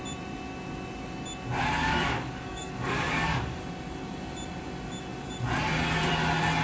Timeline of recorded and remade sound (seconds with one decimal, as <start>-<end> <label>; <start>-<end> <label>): 0.0-1.8 recorded; 1.8-3.6 remade; 3.6-6.6 recorded